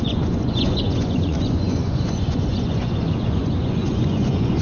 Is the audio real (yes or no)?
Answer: no